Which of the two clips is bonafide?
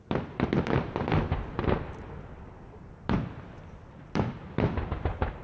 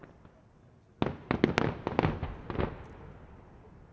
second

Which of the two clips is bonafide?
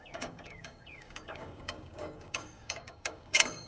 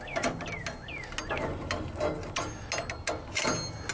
second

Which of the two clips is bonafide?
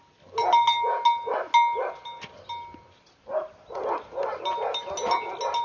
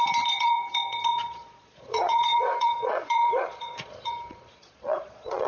first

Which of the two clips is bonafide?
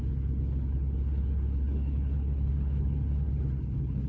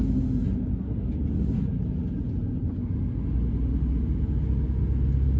second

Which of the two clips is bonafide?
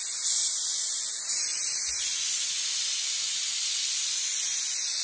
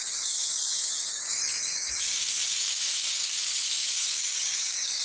first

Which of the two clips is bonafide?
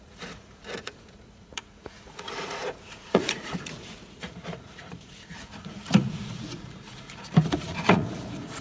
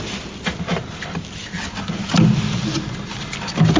second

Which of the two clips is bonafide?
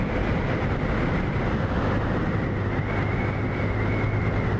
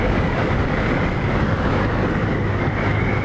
first